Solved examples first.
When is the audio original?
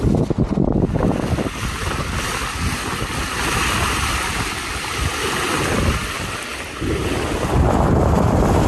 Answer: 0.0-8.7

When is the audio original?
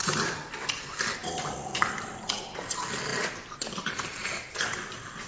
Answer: 0.0-1.2; 1.8-3.1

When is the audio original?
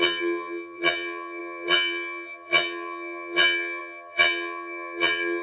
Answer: none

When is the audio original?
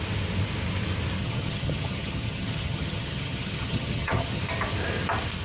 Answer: 0.0-1.2; 4.4-5.4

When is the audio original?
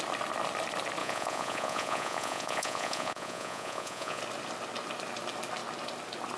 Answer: 0.0-1.0; 4.2-6.4